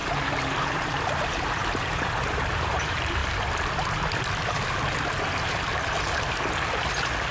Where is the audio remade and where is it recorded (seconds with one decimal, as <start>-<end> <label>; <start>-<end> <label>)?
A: 0.0-3.2 remade; 3.2-7.3 recorded